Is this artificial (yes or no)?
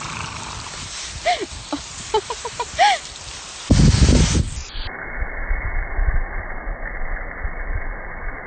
no